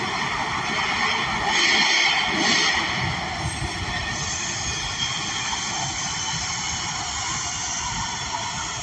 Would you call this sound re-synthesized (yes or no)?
no